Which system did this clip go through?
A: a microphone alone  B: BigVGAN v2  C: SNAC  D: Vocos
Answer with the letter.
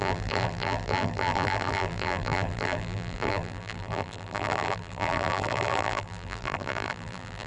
B